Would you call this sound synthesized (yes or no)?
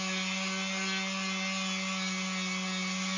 no